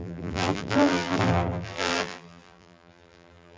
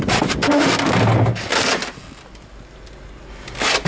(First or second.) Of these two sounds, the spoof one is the first